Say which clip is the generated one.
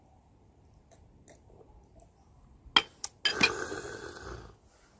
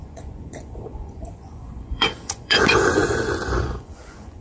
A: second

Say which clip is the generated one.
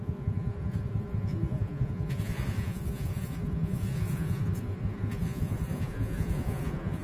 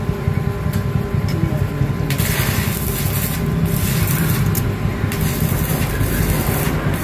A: first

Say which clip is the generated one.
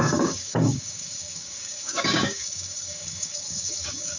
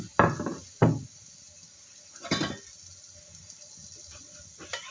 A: first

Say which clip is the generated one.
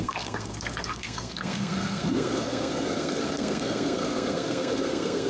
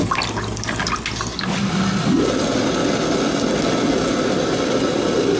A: first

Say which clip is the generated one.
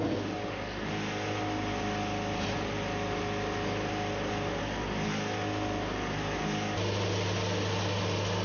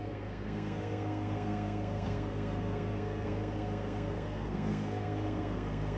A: second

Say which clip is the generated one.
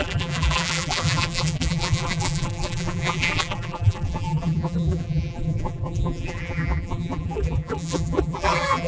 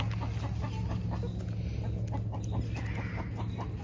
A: first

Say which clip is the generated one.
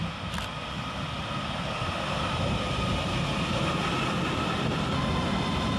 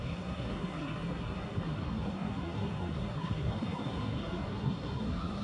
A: second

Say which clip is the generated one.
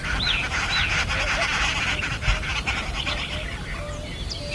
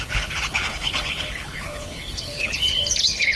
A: second